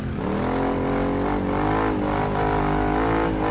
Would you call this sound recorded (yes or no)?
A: yes